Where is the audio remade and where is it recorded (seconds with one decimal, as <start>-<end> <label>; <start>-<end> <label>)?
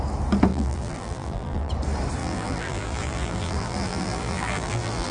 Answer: 0.0-0.5 recorded; 0.5-1.7 remade; 1.7-2.2 recorded; 2.2-5.1 remade